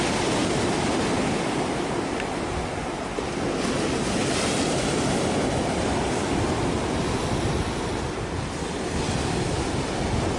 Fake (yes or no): no